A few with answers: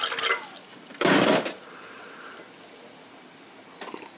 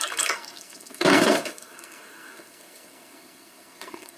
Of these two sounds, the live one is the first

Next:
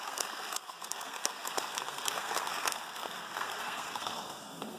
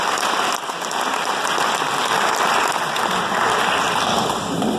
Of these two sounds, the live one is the second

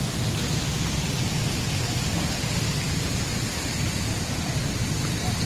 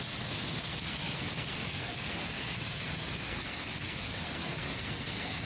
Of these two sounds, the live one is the first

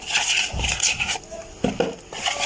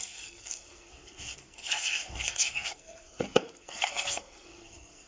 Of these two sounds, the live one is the first